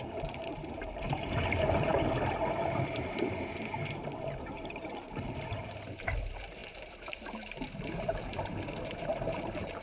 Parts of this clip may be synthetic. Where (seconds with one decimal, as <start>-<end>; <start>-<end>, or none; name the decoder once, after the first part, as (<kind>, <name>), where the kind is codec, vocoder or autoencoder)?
0.0-9.8 (vocoder, BigVGAN v2)